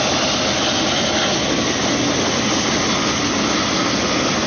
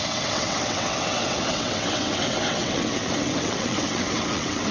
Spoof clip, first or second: second